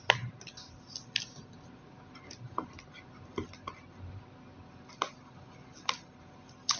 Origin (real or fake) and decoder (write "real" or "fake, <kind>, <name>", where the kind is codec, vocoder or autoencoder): real